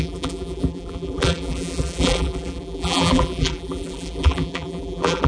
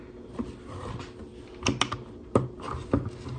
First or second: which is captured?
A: second